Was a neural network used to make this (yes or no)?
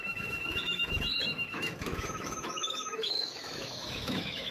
yes